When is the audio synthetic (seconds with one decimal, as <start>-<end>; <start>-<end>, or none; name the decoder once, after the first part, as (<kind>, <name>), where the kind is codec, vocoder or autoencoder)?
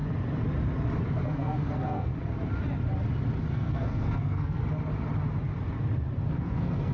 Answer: 1.0-2.1 (codec, SNAC); 3.5-4.6; 6.3-6.9